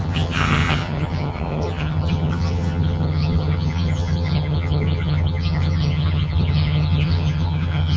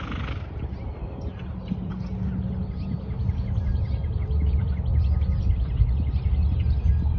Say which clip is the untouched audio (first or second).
second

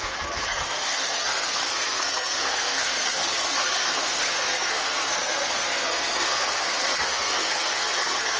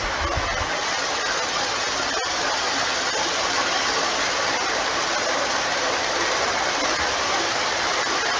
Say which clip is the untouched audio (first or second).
second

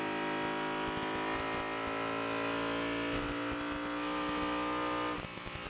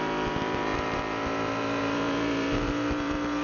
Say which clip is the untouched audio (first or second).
first